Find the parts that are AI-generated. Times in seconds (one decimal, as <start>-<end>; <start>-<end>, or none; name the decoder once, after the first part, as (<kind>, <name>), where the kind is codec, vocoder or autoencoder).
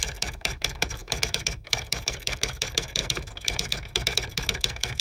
0.0-5.0 (codec, SNAC)